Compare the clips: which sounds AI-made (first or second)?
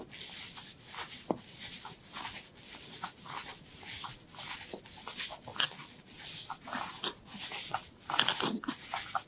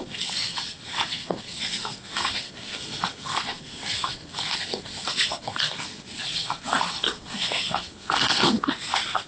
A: second